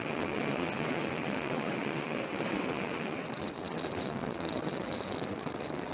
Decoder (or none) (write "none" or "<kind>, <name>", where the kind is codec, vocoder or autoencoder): vocoder, WaveNeXt